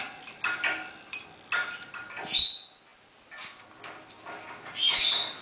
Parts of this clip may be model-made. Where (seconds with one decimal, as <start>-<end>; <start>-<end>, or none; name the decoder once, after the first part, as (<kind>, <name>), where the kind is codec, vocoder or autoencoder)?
none